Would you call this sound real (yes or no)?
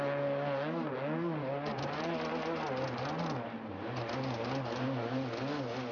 yes